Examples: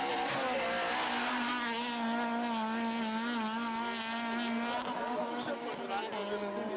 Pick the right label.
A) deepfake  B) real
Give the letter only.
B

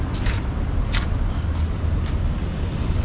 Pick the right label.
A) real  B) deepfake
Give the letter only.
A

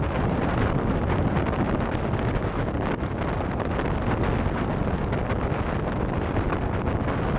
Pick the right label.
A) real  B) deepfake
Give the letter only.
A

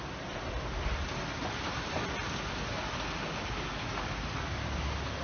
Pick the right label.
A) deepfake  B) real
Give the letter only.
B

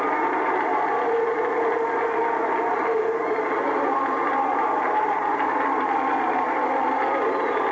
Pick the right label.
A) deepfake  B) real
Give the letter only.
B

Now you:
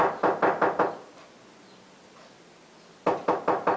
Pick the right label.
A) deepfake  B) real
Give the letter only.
B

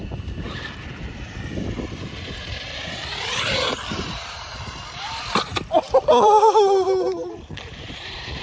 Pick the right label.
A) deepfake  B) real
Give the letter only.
A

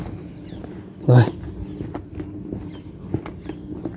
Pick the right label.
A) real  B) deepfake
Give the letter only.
A